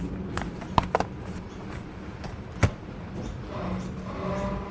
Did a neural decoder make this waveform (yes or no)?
no